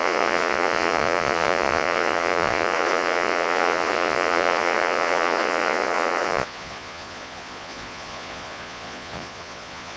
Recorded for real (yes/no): no